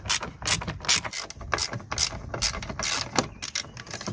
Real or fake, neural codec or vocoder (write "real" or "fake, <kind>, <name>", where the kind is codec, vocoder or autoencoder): real